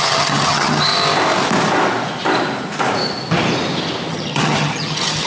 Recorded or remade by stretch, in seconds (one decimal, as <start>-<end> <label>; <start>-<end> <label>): 0.0-0.9 remade; 0.9-4.1 recorded; 4.1-5.3 remade